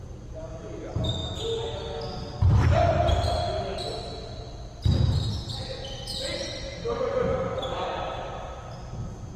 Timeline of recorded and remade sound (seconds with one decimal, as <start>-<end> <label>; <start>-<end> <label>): 0.0-9.4 recorded